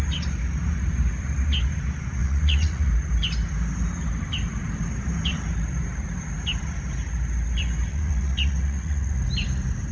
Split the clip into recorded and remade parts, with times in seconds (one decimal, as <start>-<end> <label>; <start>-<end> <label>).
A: 0.0-2.2 recorded; 2.2-2.9 remade; 2.9-7.9 recorded; 7.9-9.2 remade; 9.2-9.9 recorded